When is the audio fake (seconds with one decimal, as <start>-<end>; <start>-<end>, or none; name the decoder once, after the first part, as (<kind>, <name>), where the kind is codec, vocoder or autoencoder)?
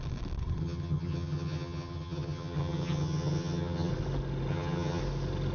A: 0.6-3.9 (vocoder, HiFi-GAN); 4.5-5.0